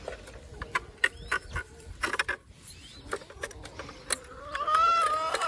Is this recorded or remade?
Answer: recorded